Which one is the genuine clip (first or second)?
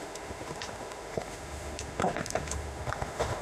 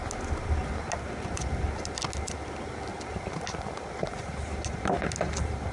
second